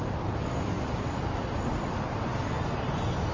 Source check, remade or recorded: recorded